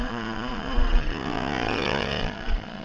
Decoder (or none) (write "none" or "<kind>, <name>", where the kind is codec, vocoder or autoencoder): vocoder, Vocos